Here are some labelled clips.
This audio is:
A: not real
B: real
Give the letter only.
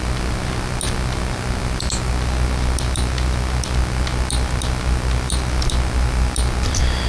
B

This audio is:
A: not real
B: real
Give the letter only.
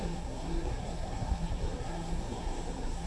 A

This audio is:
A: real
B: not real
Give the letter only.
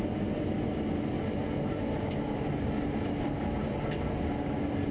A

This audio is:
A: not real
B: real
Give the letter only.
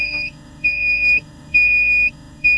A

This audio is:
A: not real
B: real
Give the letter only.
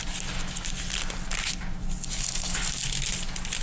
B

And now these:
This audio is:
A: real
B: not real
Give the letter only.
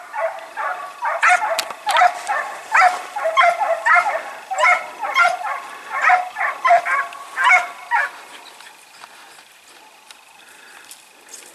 A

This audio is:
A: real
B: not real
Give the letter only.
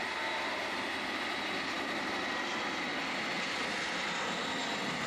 A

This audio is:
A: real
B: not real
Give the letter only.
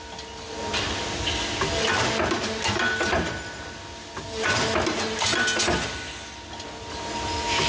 A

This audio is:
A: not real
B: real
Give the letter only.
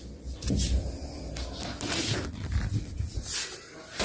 B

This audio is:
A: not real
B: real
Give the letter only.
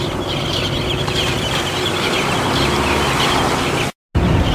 B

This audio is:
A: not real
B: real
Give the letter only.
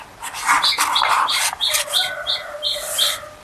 B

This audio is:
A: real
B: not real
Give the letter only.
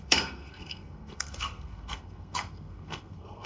B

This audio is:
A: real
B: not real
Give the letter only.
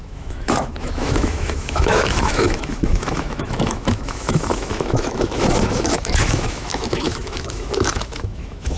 B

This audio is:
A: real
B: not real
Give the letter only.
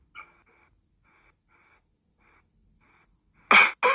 A